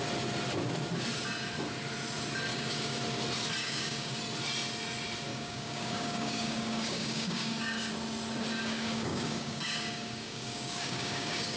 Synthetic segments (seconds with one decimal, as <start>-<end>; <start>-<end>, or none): 2.5-3.0; 3.6-4.2; 5.3-7.9; 8.6-11.6